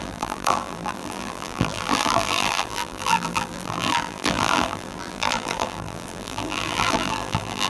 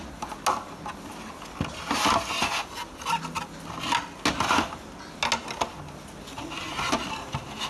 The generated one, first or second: first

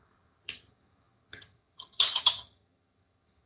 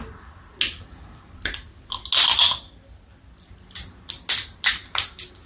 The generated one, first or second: first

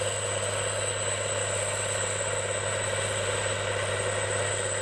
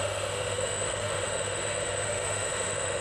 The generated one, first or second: second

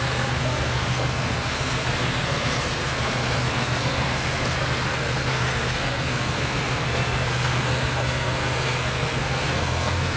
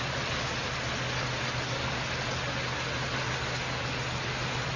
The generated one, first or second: first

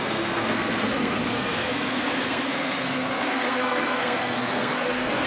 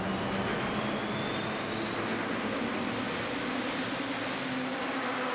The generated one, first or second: first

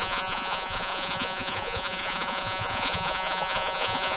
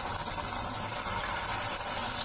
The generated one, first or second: first